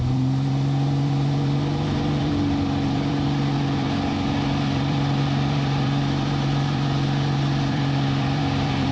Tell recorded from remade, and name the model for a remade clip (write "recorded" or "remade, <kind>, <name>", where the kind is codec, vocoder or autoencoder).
remade, vocoder, BigVGAN v2